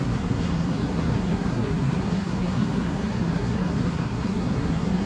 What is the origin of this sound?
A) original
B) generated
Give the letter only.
B